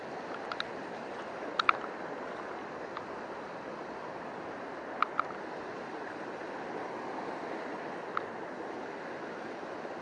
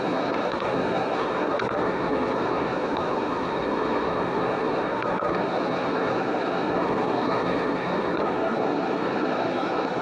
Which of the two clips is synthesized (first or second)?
second